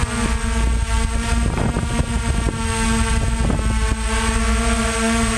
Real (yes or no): yes